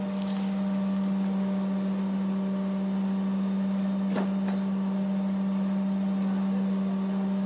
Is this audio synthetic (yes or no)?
no